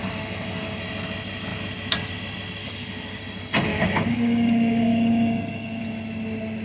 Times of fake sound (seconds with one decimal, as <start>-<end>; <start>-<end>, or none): 0.0-0.8; 2.6-3.2; 3.7-5.8